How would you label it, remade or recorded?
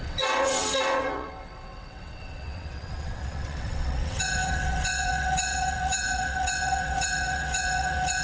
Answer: remade